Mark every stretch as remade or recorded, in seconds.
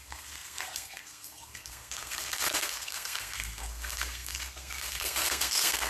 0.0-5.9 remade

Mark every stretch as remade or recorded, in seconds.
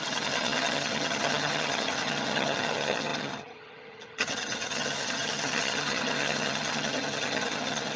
0.0-8.0 remade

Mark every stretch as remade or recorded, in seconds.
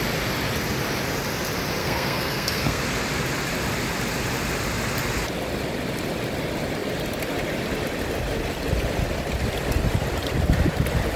0.0-1.8 recorded; 1.8-2.8 remade; 2.8-11.2 recorded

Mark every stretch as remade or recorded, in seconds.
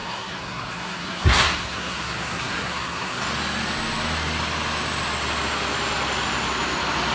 0.0-3.2 remade; 3.2-7.1 recorded